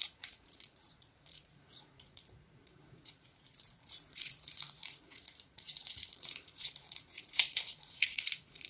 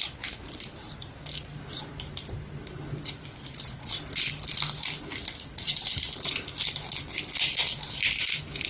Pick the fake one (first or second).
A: first